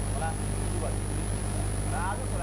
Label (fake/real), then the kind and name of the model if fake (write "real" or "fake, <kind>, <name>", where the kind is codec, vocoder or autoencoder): real